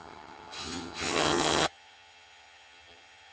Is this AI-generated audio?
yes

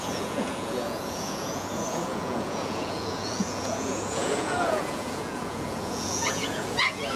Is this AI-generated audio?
yes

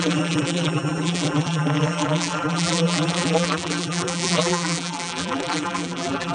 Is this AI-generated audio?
yes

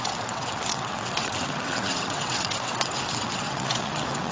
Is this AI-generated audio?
yes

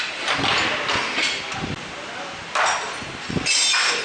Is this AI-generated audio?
no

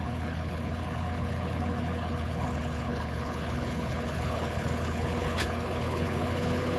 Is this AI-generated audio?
yes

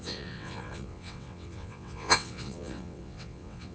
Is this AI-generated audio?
yes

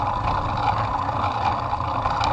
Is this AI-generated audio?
no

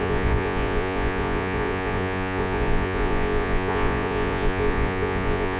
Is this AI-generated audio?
yes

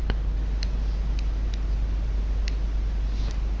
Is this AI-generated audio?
no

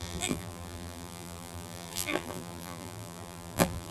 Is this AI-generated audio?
yes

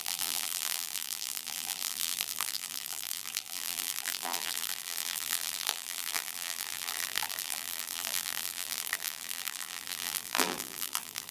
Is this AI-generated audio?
yes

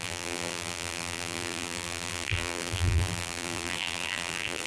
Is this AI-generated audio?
yes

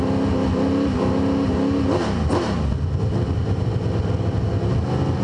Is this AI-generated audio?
no